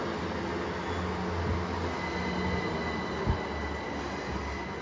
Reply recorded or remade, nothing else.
recorded